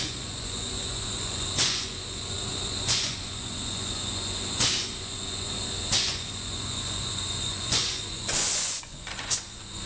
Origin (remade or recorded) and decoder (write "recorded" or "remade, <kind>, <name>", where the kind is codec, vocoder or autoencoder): remade, vocoder, Vocos